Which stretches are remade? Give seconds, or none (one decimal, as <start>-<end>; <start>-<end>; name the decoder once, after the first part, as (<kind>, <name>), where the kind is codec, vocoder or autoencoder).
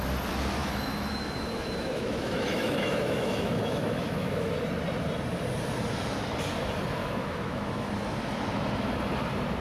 0.6-4.5 (autoencoder, DAC-VAE); 7.0-7.9